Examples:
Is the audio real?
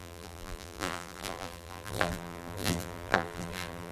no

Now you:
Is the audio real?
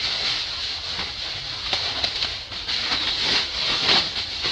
yes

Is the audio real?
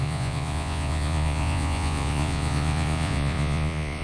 no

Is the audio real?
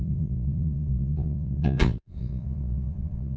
no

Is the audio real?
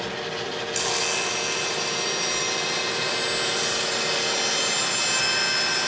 yes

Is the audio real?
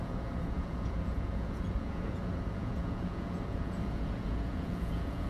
no